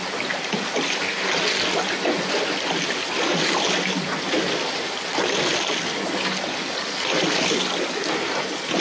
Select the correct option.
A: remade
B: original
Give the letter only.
B